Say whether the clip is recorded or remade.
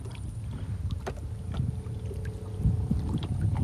recorded